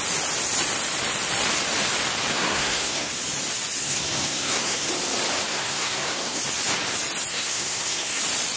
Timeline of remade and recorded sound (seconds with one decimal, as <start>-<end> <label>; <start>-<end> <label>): 0.0-2.3 recorded; 2.3-3.1 remade; 3.1-3.8 recorded; 3.8-4.9 remade; 4.9-5.5 recorded; 5.5-6.4 remade; 6.4-7.3 recorded; 7.3-8.2 remade; 8.2-8.6 recorded